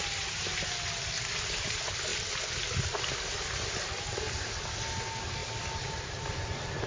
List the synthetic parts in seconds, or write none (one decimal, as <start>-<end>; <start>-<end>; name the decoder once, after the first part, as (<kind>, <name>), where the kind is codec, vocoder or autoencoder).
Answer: none